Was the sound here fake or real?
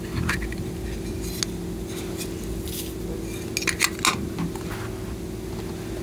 real